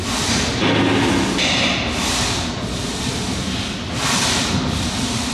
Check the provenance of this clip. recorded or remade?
recorded